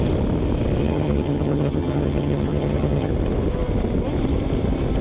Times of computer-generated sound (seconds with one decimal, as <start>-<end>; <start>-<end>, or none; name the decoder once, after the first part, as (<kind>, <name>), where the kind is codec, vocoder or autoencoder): 0.8-3.1 (vocoder, HiFi-GAN)